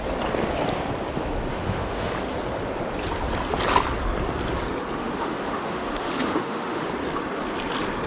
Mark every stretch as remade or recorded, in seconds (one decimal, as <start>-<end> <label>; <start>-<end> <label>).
0.0-1.5 recorded; 1.5-2.1 remade; 2.1-5.0 recorded; 5.0-6.9 remade; 6.9-8.1 recorded

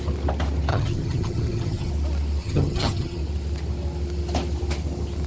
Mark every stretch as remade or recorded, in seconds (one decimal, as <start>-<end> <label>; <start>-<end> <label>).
0.0-0.7 recorded; 0.7-1.9 remade; 1.9-2.4 recorded; 2.4-3.2 remade; 3.2-5.3 recorded

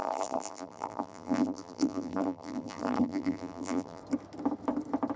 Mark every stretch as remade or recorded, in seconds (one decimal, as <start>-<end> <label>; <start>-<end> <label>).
0.0-4.0 remade; 4.0-5.2 recorded